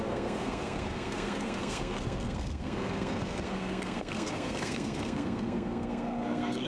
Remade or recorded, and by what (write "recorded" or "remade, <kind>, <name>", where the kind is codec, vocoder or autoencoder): remade, codec, SNAC